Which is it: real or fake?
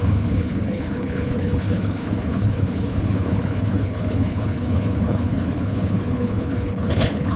fake